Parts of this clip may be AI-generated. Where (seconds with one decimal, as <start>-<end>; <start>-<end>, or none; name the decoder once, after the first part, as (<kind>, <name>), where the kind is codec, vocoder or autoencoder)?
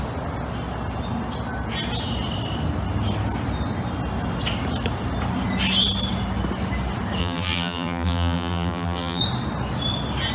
7.2-9.2 (vocoder, BigVGAN v2)